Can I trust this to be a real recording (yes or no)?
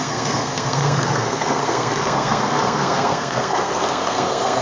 no